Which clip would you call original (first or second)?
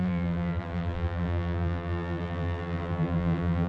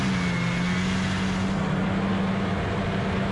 second